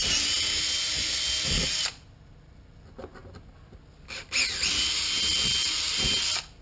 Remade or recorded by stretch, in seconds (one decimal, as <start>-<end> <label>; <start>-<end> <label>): 0.0-6.6 recorded